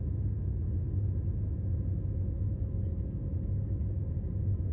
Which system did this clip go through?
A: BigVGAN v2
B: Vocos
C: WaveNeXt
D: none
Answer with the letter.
D